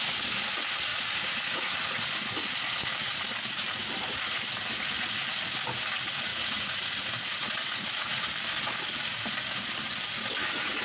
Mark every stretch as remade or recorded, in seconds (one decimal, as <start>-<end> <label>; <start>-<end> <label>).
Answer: 0.0-0.9 recorded; 0.9-2.1 remade; 2.1-6.3 recorded; 6.3-8.2 remade; 8.2-10.8 recorded